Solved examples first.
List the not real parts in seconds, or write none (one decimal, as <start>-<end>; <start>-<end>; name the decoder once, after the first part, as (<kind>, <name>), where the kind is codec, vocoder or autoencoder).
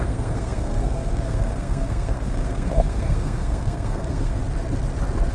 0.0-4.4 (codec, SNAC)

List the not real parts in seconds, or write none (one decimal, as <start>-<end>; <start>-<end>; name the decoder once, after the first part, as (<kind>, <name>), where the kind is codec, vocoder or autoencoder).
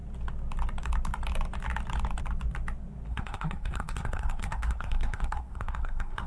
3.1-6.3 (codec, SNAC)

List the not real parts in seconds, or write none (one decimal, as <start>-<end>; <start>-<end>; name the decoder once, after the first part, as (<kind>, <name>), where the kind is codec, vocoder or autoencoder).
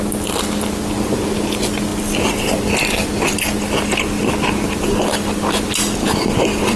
none